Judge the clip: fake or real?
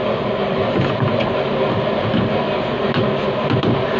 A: real